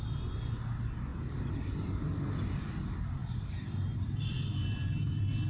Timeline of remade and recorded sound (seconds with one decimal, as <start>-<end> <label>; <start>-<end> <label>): 0.0-1.1 recorded; 1.1-2.7 remade; 2.7-3.2 recorded; 3.2-5.5 remade